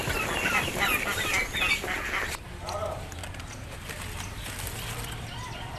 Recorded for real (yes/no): yes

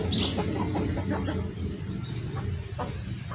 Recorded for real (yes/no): yes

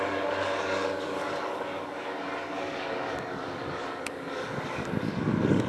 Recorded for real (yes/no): no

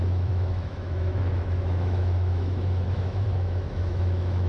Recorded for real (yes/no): no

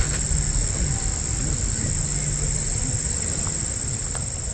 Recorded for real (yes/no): yes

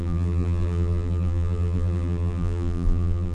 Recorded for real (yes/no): no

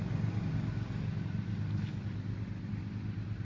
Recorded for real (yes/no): yes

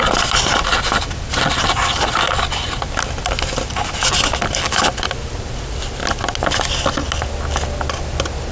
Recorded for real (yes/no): yes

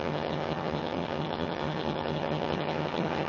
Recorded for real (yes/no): no